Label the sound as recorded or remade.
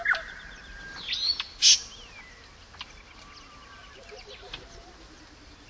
recorded